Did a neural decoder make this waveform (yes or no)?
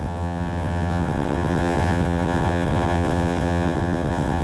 yes